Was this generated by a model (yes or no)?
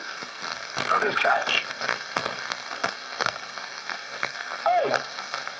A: yes